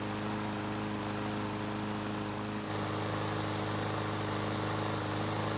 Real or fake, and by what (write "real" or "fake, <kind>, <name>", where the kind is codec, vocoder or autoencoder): real